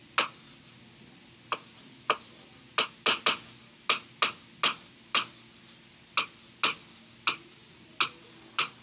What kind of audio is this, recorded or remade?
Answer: recorded